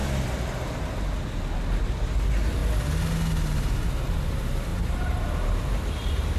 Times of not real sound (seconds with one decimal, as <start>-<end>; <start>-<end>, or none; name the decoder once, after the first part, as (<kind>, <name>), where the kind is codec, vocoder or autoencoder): 1.6-2.6 (vocoder, BigVGAN v2); 4.1-6.4